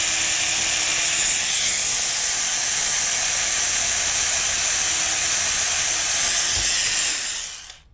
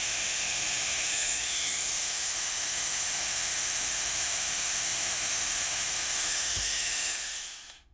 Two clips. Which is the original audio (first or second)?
first